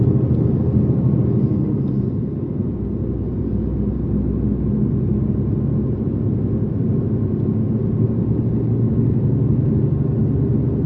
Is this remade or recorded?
recorded